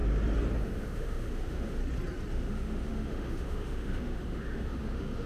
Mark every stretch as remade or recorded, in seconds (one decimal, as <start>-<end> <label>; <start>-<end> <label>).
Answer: 0.0-0.6 recorded; 0.6-1.8 remade; 1.8-2.3 recorded; 2.3-5.3 remade